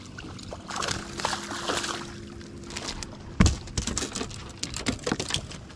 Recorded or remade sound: recorded